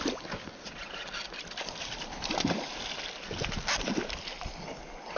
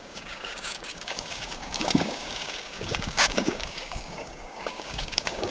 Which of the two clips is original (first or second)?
first